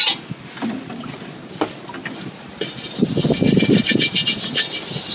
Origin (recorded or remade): recorded